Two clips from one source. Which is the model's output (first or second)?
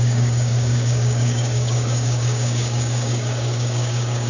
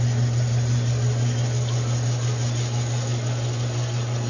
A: first